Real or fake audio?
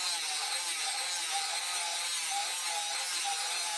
real